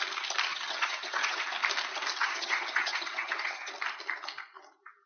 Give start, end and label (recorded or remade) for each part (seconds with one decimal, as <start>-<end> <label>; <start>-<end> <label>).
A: 0.0-0.5 recorded; 0.5-1.4 remade; 1.4-2.2 recorded; 2.2-3.7 remade; 3.7-5.1 recorded